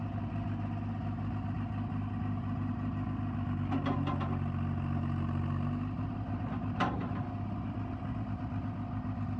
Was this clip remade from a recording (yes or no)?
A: no